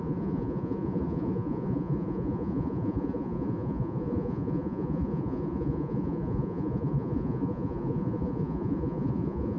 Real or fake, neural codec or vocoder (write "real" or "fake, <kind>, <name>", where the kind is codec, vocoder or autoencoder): fake, vocoder, Vocos